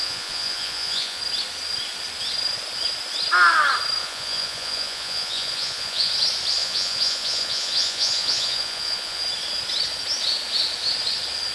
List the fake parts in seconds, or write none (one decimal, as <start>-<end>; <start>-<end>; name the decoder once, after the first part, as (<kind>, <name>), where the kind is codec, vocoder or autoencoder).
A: 0.0-1.2 (vocoder, Vocos); 4.0-6.1; 6.6-9.2